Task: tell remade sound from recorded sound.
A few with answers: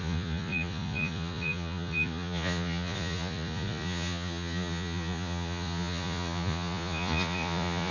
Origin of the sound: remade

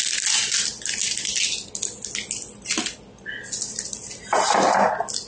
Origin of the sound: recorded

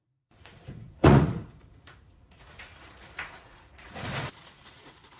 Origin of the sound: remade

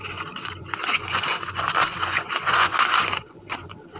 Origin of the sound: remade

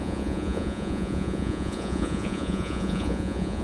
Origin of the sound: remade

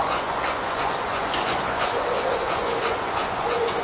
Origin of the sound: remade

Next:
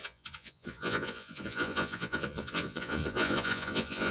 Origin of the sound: remade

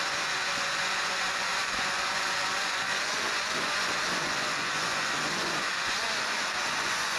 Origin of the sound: remade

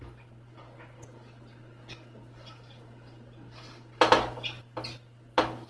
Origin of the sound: recorded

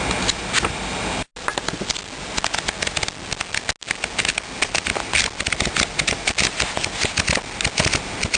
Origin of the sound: recorded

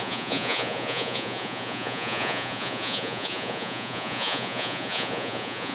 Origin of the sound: remade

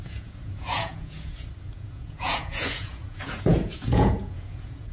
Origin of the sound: remade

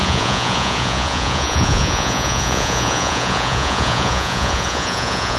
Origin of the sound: remade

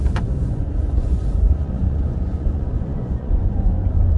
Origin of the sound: remade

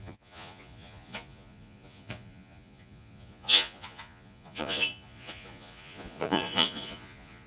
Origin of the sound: remade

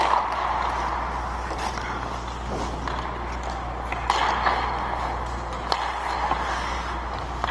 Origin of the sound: recorded